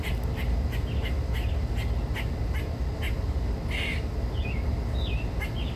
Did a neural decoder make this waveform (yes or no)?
no